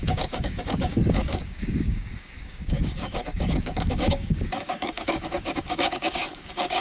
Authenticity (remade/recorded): remade